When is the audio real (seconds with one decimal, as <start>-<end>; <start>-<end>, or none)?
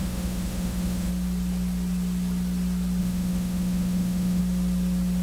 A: 1.1-3.0; 4.4-5.2